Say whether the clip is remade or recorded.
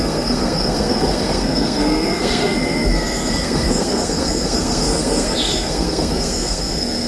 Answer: remade